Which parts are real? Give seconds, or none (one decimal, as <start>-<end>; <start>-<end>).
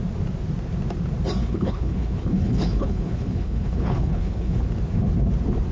0.0-1.4; 4.6-5.7